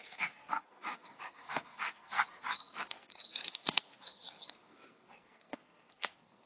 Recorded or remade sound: remade